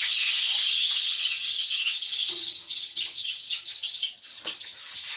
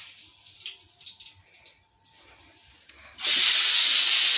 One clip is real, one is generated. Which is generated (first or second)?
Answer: first